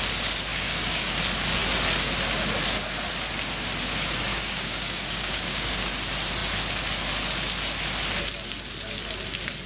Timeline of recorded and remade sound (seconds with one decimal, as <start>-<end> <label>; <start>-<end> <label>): 0.0-0.5 recorded; 0.5-1.1 remade; 1.1-4.3 recorded; 4.3-5.9 remade; 5.9-9.7 recorded